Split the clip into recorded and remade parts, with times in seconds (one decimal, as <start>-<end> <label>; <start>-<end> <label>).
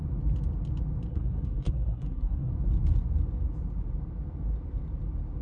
0.0-1.1 recorded; 1.1-2.5 remade; 2.5-5.4 recorded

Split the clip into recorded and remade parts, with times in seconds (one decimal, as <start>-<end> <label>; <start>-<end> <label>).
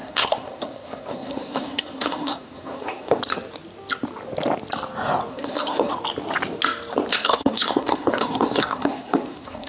0.0-3.2 remade; 3.2-5.3 recorded; 5.3-5.9 remade; 5.9-7.1 recorded; 7.1-9.7 remade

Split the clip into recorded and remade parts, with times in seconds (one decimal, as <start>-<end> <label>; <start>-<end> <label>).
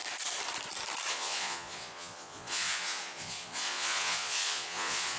0.0-1.1 recorded; 1.1-5.2 remade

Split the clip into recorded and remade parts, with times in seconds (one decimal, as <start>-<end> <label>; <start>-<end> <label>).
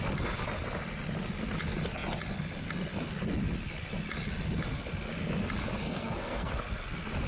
0.0-5.8 recorded; 5.8-6.5 remade; 6.5-7.3 recorded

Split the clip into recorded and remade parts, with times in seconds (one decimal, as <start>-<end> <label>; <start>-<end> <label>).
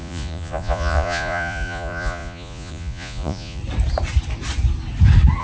0.0-3.6 remade; 3.6-5.4 recorded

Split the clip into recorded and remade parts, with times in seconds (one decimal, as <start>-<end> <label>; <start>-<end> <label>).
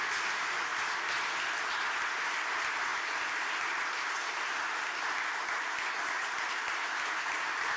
0.0-7.8 recorded